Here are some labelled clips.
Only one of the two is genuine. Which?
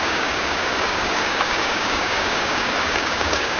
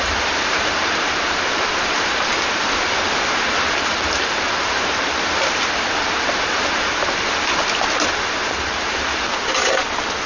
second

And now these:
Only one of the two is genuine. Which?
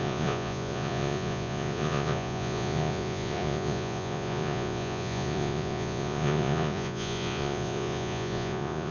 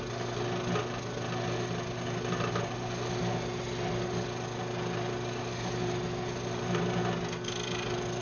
second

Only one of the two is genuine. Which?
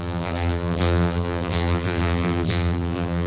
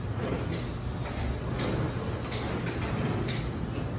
second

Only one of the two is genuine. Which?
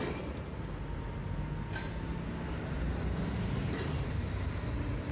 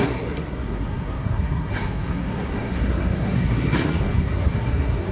first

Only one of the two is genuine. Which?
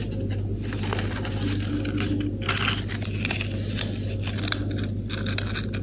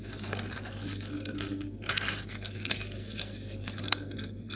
first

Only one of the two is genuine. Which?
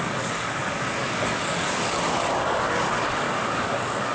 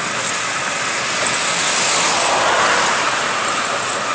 second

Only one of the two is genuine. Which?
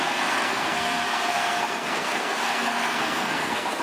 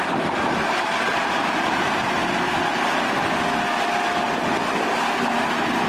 second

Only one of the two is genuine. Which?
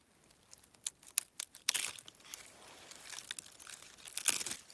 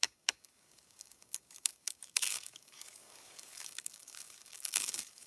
first